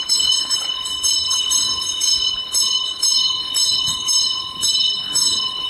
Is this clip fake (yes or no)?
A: yes